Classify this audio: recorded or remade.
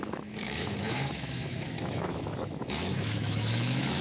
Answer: remade